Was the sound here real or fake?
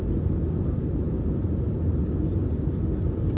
real